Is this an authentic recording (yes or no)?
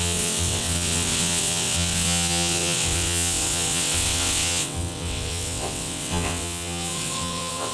no